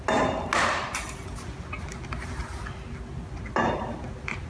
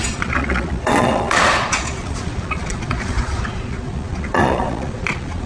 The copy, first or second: second